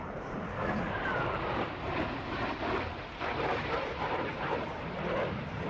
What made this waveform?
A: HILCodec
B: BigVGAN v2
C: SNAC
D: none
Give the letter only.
B